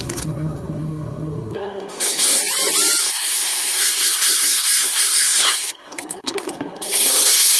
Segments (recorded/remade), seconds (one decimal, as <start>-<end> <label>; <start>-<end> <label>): 0.0-2.4 remade; 2.4-3.0 recorded; 3.0-7.6 remade